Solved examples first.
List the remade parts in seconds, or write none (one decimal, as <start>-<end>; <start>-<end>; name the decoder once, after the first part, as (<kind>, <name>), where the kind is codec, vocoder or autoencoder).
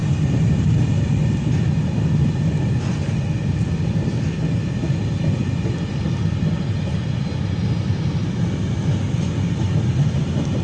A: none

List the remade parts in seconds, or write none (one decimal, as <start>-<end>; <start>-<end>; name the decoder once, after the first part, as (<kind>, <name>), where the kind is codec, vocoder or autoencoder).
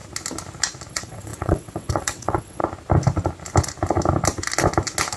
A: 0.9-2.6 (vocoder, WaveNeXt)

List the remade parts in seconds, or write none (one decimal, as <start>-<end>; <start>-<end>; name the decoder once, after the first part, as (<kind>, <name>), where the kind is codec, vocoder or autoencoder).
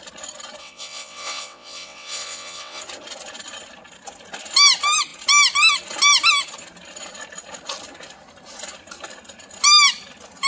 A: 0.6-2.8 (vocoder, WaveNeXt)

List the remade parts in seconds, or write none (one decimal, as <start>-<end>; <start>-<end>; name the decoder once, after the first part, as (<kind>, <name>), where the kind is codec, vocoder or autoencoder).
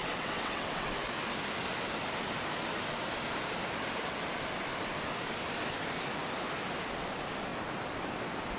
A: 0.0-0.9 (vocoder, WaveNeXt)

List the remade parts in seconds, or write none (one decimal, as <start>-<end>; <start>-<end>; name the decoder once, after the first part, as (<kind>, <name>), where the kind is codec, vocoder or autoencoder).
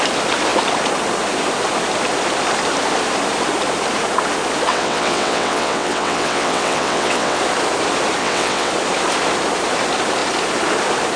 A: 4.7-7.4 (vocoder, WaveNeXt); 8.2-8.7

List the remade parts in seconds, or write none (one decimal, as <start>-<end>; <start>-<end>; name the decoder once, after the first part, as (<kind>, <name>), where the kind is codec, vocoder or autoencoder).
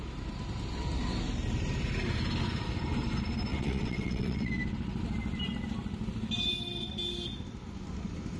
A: 3.5-4.5 (vocoder, WaveNeXt)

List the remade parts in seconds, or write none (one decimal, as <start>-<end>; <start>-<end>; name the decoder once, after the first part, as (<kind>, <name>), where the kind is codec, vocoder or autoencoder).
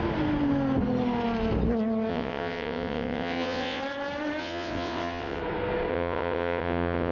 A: 2.1-3.8 (vocoder, WaveNeXt); 4.4-5.4; 5.9-7.1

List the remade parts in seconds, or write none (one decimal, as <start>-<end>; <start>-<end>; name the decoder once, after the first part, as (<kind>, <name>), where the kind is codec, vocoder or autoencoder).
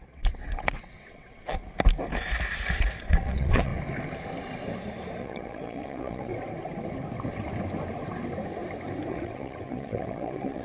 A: 0.0-1.6 (vocoder, WaveNeXt); 3.0-3.7; 5.2-6.3; 9.1-10.6